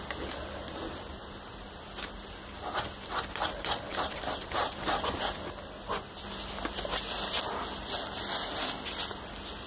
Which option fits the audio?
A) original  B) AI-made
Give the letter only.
A